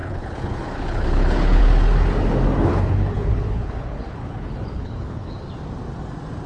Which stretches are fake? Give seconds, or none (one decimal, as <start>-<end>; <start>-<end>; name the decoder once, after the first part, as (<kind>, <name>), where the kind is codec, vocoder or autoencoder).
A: 0.0-1.6 (codec, HILCodec); 2.7-5.3